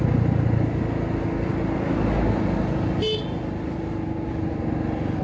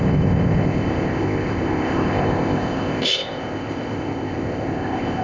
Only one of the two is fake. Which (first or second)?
second